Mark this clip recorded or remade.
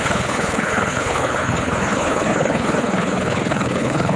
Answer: remade